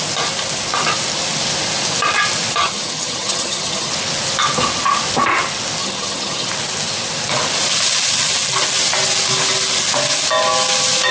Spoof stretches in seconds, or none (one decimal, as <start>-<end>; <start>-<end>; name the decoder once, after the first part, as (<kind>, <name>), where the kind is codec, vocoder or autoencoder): 2.6-3.9 (vocoder, HiFi-GAN); 5.8-6.5